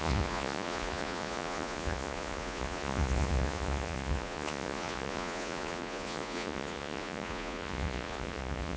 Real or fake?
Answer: fake